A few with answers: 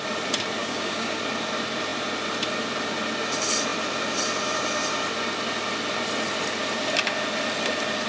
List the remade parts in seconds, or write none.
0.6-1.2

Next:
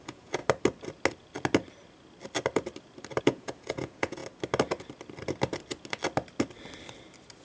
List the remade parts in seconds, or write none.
0.0-0.4; 3.2-4.2

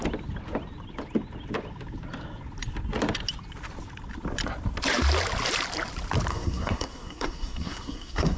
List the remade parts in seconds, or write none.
6.3-8.4

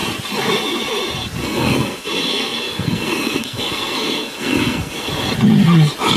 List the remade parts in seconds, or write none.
1.4-5.1